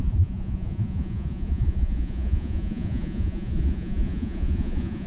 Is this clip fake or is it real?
fake